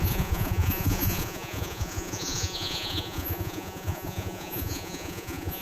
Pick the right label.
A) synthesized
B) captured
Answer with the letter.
A